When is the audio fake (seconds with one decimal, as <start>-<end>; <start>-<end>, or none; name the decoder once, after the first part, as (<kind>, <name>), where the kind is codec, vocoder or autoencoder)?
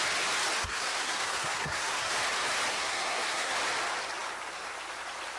0.6-2.1 (codec, SNAC); 2.7-3.5